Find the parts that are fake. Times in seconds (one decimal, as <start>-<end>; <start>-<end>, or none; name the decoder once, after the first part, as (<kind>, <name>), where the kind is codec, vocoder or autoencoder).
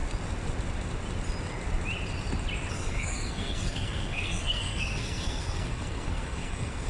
2.7-6.9 (codec, SNAC)